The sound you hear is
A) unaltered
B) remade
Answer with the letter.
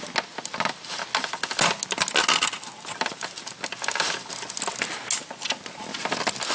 A